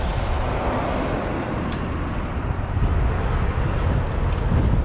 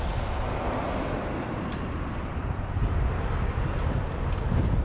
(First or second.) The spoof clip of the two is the second